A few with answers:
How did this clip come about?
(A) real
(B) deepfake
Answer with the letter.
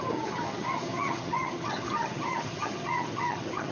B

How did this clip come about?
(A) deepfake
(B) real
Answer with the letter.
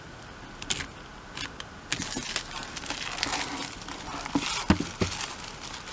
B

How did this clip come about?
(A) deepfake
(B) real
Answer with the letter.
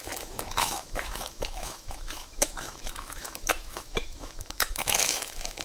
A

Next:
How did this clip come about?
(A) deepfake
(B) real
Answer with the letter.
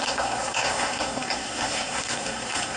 A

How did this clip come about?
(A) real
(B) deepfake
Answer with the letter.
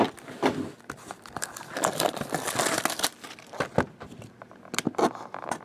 A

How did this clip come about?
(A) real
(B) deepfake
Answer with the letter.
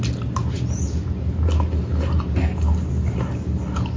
A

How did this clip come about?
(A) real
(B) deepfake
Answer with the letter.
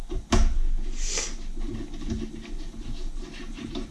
A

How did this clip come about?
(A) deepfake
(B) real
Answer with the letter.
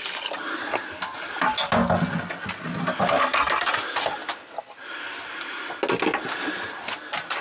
B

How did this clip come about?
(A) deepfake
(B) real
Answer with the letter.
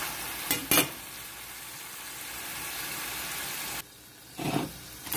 B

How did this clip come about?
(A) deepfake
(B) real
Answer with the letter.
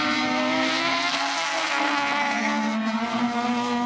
A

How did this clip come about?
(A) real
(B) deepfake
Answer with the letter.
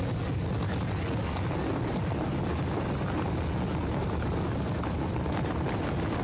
A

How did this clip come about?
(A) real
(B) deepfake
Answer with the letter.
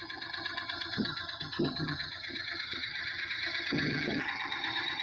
B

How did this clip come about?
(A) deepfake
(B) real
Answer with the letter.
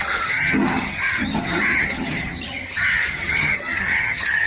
A